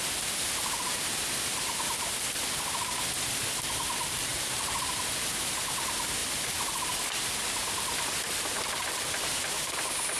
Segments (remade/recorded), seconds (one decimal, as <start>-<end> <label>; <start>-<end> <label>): 0.0-4.3 recorded; 4.3-5.6 remade; 5.6-6.2 recorded; 6.2-7.4 remade; 7.4-10.2 recorded